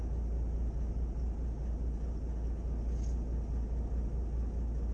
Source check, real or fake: real